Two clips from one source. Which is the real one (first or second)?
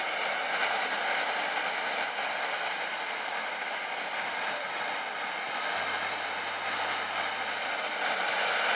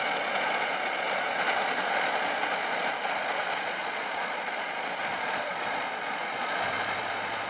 first